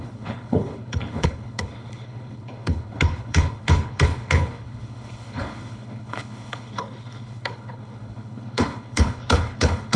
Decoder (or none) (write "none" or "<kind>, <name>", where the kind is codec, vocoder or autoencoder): codec, HILCodec